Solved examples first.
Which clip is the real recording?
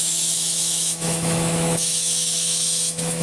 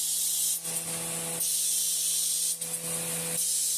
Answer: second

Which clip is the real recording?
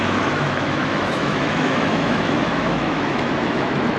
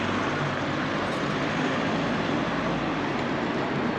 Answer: second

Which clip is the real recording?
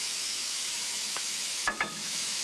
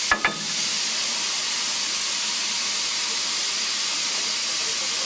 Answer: second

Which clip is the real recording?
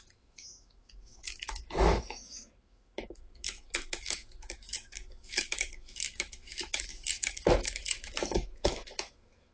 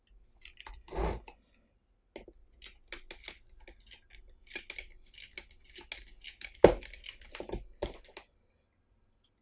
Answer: second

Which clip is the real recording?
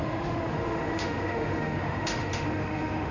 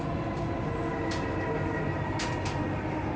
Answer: second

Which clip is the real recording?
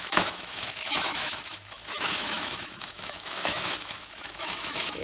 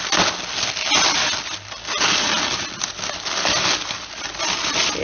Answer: second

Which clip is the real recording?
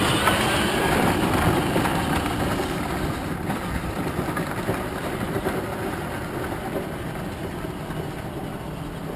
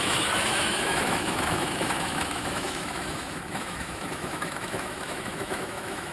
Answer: first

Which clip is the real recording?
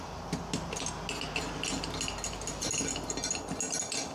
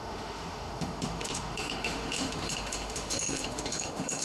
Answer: first